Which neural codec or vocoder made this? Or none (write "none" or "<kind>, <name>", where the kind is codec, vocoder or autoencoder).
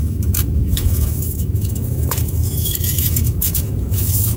autoencoder, DAC-VAE